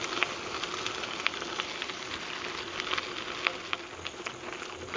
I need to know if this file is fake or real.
real